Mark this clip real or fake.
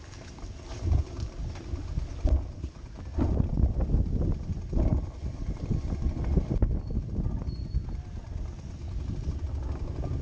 real